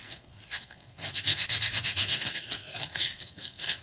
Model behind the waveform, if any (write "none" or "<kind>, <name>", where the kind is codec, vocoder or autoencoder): codec, SNAC